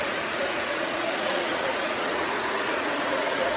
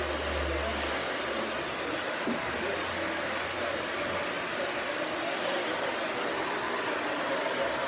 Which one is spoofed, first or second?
first